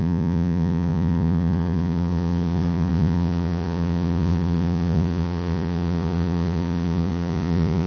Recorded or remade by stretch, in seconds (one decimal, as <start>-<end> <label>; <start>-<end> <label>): 0.0-7.9 remade